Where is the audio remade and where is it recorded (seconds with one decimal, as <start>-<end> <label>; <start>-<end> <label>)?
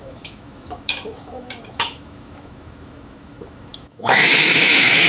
0.0-5.1 remade